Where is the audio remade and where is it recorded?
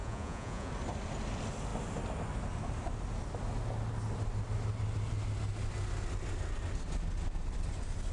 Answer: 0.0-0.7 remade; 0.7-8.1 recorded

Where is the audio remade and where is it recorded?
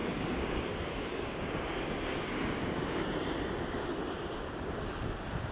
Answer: 0.0-3.3 remade; 3.3-5.5 recorded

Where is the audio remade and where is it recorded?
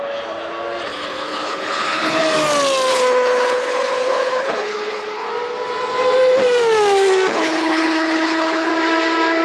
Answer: 0.0-0.9 recorded; 0.9-2.2 remade; 2.2-2.9 recorded; 2.9-5.3 remade; 5.3-7.3 recorded; 7.3-8.7 remade; 8.7-9.4 recorded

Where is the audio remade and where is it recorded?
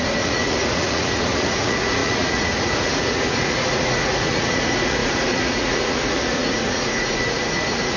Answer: 0.0-8.0 remade